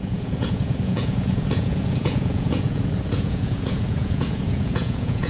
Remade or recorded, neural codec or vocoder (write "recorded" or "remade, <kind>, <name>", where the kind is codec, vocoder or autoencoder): remade, vocoder, Vocos